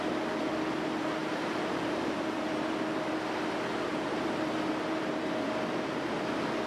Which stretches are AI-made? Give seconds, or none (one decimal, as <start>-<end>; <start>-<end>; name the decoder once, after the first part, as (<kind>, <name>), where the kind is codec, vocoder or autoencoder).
1.2-2.7 (vocoder, BigVGAN v2); 3.9-5.2